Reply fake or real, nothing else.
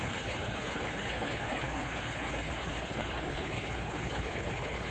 fake